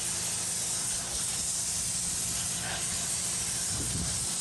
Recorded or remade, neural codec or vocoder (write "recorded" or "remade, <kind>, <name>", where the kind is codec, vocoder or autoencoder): recorded